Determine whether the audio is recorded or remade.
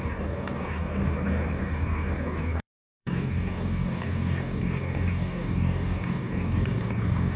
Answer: remade